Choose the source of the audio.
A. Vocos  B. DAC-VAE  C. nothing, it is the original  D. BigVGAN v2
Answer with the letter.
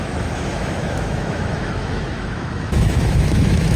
B